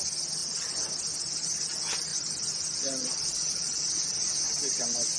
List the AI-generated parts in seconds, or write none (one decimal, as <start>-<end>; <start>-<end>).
none